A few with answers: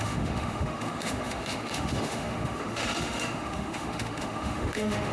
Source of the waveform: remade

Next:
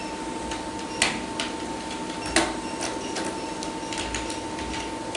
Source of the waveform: recorded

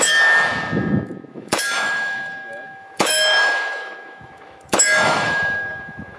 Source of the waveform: remade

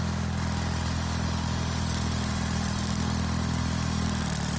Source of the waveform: recorded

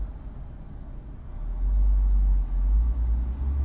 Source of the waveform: recorded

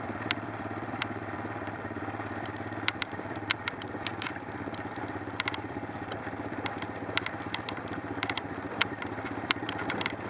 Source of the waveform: remade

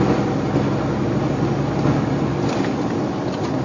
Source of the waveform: recorded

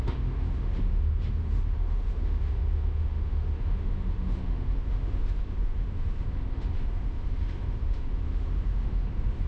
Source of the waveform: remade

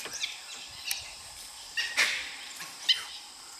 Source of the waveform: remade